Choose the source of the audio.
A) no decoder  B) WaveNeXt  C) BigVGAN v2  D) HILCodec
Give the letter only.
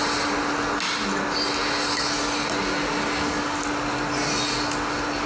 A